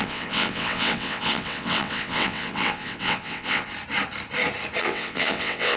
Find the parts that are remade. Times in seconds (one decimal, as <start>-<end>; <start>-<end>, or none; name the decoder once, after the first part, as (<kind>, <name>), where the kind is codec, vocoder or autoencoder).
0.0-3.7 (vocoder, WaveNeXt); 4.8-5.8